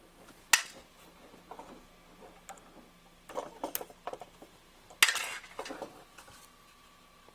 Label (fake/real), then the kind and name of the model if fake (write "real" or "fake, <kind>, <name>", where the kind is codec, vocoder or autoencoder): real